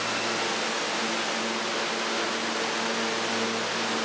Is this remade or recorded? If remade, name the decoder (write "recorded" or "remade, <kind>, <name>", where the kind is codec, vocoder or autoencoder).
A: recorded